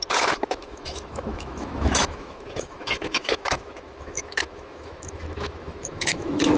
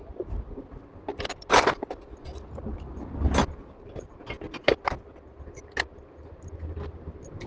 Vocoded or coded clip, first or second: first